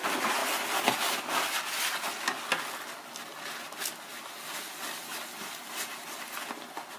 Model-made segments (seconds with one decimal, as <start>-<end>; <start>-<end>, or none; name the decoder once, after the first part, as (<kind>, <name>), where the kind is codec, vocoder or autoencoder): none